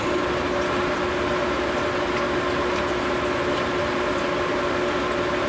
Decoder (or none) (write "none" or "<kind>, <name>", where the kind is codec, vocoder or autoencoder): none